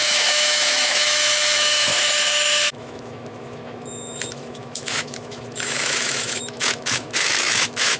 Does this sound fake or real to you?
fake